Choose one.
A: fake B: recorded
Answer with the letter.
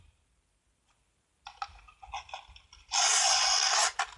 B